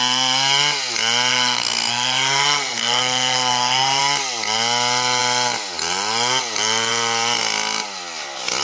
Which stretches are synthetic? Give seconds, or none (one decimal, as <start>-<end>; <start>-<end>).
1.3-4.0